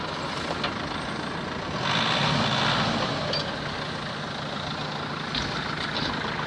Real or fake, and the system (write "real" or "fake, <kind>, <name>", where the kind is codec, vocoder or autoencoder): real